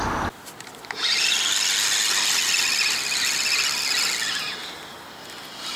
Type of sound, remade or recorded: recorded